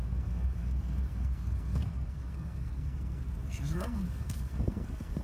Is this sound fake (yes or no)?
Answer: yes